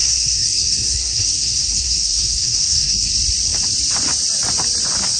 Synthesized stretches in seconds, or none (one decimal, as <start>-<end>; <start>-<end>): 0.0-3.1